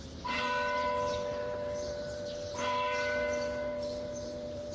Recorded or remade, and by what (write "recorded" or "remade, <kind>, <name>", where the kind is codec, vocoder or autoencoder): remade, vocoder, BigVGAN v2